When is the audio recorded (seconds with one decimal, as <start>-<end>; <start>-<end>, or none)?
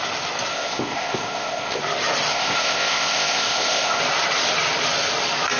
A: 0.0-0.5; 1.8-2.3; 4.0-5.6